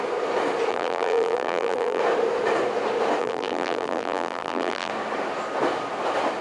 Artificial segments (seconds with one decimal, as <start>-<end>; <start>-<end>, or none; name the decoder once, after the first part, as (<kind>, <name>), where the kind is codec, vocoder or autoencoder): 0.7-2.0 (vocoder, BigVGAN v2); 3.2-4.9